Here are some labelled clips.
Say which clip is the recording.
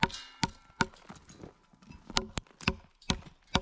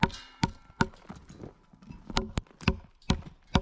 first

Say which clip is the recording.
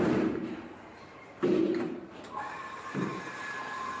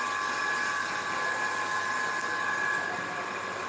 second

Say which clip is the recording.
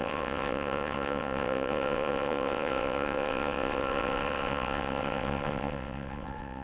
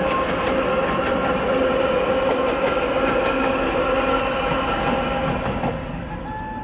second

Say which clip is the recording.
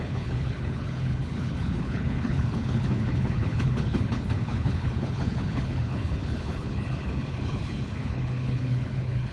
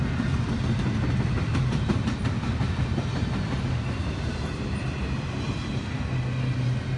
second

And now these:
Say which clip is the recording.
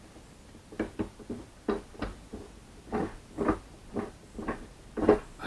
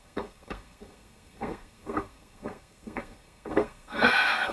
first